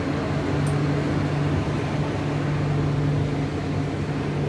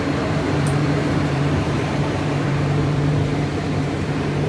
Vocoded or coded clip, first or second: second